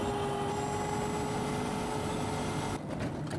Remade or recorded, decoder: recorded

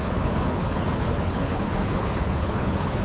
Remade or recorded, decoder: remade, codec, HILCodec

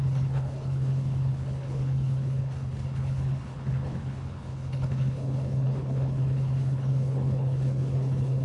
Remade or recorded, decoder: remade, codec, HILCodec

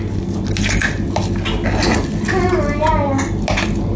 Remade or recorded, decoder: recorded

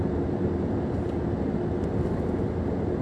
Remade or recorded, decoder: recorded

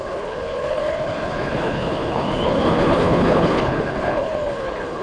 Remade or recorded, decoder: remade, codec, HILCodec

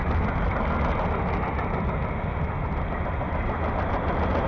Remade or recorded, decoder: recorded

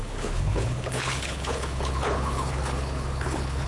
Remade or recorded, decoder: remade, codec, HILCodec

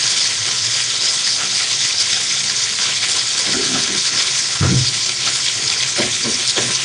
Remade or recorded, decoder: remade, codec, HILCodec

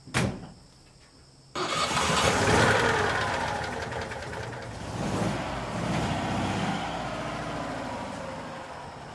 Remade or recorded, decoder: recorded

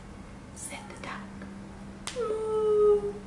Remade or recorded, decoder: recorded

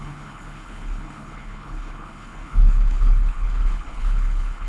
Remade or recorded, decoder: remade, codec, HILCodec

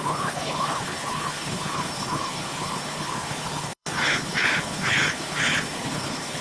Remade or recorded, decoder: remade, codec, HILCodec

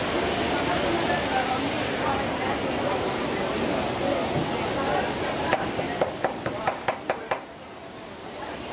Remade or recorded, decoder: recorded